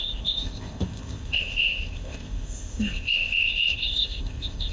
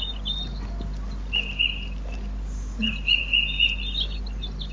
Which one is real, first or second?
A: second